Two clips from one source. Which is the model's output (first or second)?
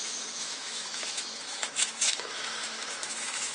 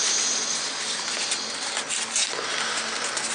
first